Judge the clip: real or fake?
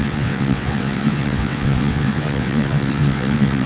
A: fake